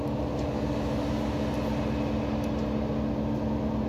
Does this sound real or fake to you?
real